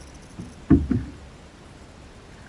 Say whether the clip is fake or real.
real